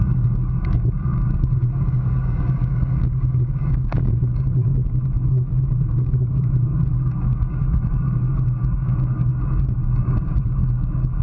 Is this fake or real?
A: fake